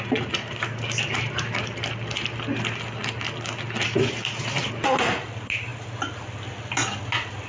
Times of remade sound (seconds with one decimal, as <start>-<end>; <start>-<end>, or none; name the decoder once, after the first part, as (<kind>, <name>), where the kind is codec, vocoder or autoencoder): none